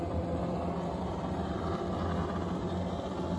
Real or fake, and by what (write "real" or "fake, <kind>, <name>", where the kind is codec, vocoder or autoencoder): real